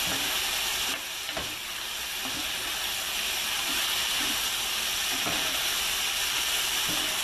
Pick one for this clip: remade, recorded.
recorded